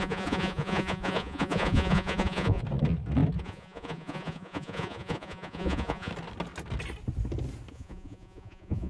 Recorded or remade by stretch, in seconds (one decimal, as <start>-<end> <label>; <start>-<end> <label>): 0.0-2.6 remade; 2.6-3.4 recorded; 3.4-6.1 remade; 6.1-7.7 recorded; 7.7-8.9 remade